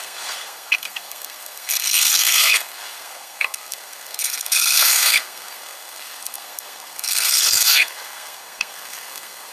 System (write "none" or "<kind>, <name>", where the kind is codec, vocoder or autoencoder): codec, SNAC